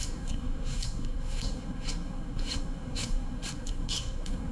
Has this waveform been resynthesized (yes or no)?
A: yes